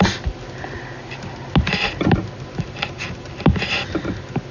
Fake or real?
real